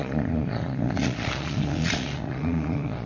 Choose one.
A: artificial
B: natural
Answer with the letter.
A